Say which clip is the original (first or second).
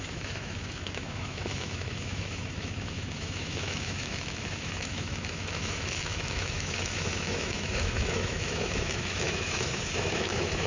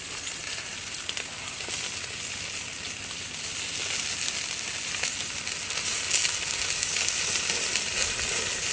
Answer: second